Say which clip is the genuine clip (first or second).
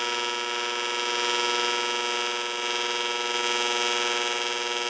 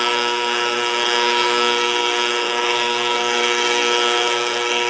first